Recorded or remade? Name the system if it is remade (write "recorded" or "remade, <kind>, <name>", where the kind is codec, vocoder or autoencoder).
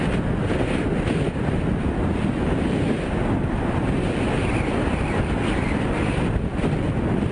recorded